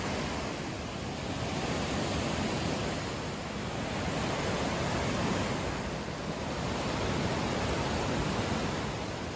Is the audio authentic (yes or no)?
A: yes